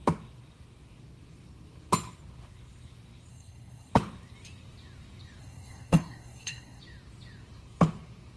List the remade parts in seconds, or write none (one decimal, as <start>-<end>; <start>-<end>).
3.3-3.9; 5.4-6.8